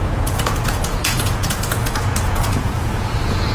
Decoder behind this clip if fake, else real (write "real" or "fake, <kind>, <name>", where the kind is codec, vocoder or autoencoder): fake, vocoder, Vocos